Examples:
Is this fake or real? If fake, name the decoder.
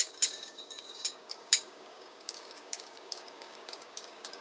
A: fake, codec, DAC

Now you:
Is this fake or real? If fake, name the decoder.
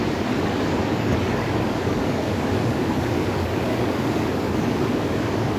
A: fake, codec, DAC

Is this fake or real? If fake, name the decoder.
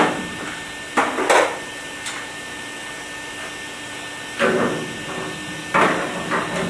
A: real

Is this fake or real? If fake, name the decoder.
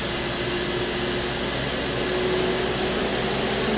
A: real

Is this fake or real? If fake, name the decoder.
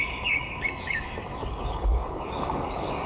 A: fake, codec, DAC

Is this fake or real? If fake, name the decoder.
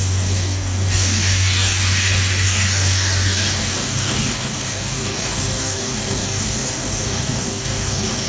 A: fake, codec, DAC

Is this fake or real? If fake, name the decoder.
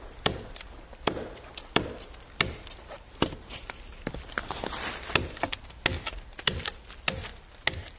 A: real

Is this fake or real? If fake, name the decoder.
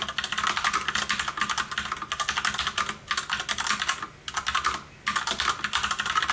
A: real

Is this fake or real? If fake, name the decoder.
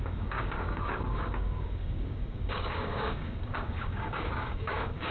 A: fake, codec, DAC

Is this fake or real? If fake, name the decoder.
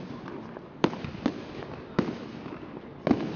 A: real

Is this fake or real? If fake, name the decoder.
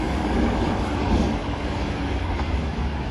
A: fake, codec, DAC